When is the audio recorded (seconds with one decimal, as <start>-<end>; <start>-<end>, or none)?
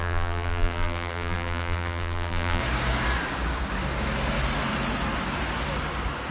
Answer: 2.6-6.3